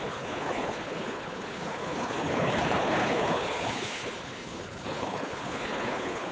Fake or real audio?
fake